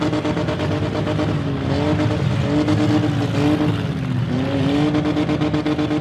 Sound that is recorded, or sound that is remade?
recorded